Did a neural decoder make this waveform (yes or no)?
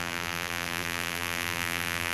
yes